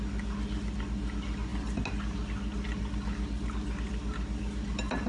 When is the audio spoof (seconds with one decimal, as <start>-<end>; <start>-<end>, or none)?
none